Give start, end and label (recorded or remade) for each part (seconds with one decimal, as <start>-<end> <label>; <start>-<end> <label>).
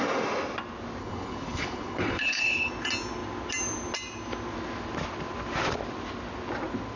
0.0-1.0 recorded; 1.0-2.7 remade; 2.7-7.0 recorded